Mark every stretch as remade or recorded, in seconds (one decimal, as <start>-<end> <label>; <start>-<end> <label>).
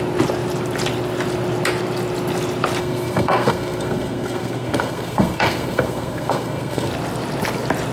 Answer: 0.0-2.8 recorded; 2.8-6.9 remade; 6.9-7.9 recorded